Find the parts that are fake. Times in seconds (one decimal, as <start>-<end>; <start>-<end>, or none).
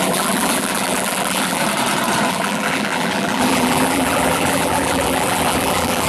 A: 0.0-1.6; 2.3-6.1